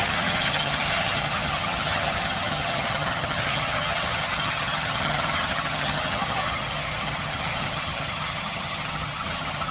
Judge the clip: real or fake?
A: fake